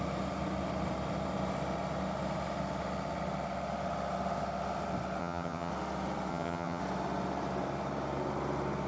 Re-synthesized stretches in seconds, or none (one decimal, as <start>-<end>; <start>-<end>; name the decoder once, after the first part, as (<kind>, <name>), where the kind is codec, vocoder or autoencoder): 5.2-5.7 (vocoder, HiFi-GAN); 6.3-6.8